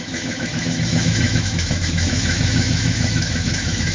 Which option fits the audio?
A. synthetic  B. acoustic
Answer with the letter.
A